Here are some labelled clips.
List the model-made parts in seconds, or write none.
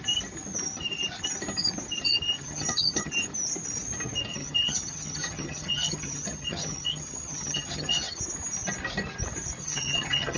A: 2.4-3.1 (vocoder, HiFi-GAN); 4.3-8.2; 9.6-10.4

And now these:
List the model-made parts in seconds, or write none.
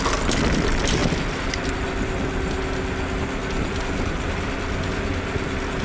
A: none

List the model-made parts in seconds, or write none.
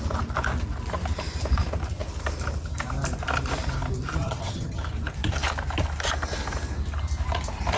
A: 4.2-4.8 (vocoder, HiFi-GAN)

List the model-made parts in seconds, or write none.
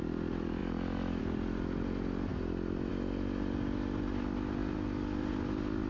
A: none